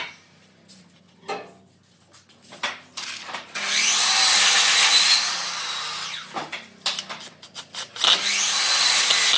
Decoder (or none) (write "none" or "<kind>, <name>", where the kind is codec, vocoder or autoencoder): none